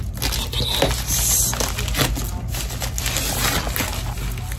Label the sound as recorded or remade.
recorded